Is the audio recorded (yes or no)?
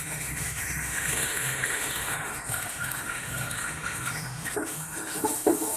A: no